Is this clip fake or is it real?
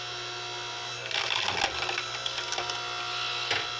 real